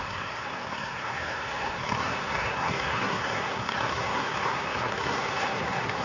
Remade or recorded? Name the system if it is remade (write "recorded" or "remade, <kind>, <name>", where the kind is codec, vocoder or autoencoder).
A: remade, codec, SNAC